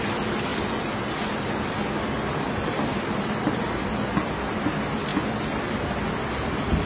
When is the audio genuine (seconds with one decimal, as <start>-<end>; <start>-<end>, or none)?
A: 0.0-6.9